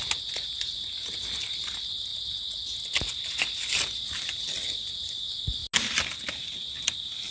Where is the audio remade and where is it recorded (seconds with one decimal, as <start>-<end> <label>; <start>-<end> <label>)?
0.0-7.3 recorded